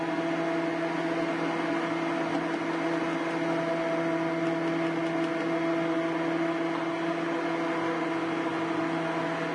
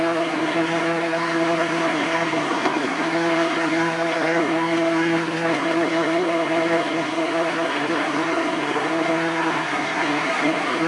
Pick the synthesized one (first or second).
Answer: second